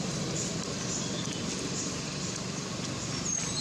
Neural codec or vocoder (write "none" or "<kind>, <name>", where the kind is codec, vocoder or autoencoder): none